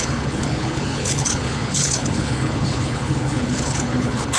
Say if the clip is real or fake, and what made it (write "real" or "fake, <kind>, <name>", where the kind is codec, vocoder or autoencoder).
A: fake, codec, HILCodec